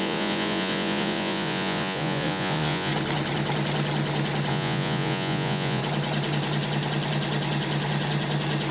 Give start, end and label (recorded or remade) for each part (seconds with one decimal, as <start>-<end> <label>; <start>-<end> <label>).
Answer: 0.0-2.9 remade; 2.9-4.5 recorded; 4.5-5.8 remade; 5.8-8.7 recorded